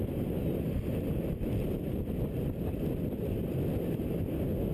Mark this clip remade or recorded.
remade